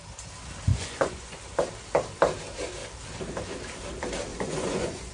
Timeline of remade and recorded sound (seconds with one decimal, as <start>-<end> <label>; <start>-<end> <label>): 0.0-0.7 recorded; 0.7-1.4 remade; 1.4-4.3 recorded; 4.3-5.1 remade